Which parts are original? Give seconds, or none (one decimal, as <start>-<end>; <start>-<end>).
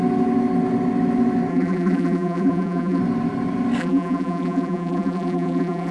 0.0-1.5; 3.0-3.8